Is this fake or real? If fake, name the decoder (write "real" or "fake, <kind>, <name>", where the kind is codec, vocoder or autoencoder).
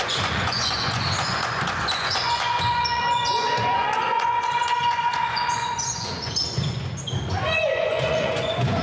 fake, vocoder, Vocos